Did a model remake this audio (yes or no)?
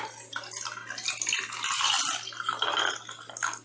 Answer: no